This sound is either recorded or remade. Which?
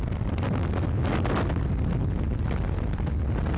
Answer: recorded